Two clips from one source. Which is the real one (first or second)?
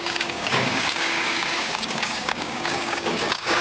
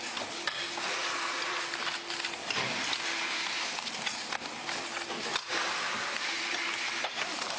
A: second